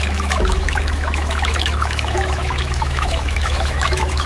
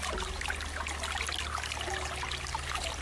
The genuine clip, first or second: second